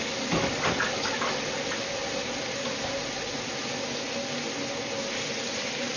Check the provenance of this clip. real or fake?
real